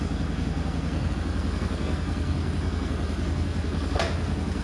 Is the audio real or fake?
fake